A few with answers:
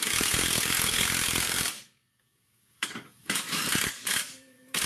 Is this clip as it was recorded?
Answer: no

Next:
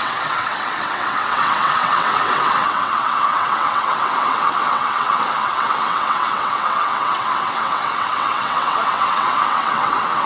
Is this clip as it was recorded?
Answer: no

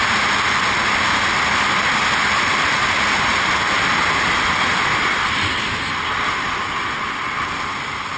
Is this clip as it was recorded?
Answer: yes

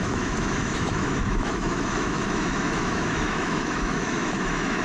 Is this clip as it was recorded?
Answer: no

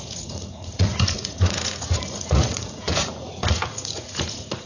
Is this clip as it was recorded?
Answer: no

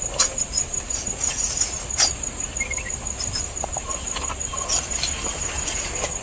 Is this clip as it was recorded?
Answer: yes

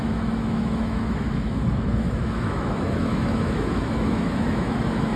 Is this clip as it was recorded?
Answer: no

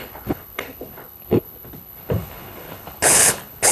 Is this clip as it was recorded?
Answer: no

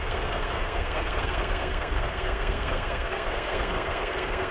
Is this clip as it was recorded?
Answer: no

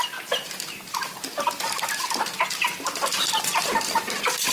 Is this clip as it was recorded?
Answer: yes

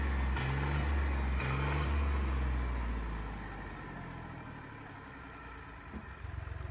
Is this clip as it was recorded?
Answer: yes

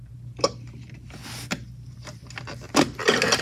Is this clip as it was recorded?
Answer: yes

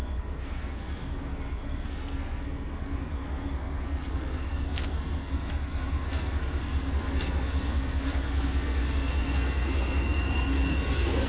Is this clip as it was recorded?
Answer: no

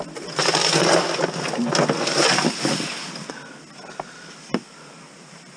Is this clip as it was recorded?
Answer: yes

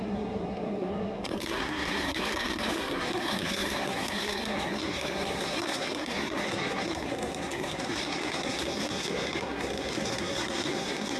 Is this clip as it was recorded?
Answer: no